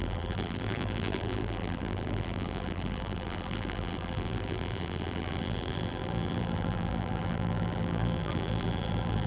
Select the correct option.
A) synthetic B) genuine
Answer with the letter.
A